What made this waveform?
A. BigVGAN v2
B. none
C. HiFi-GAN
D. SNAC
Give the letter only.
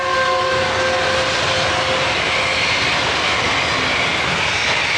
B